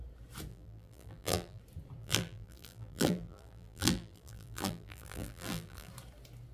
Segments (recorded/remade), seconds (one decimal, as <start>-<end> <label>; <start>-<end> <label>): 0.0-0.5 recorded; 0.5-1.6 remade; 1.6-2.0 recorded; 2.0-5.9 remade; 5.9-6.5 recorded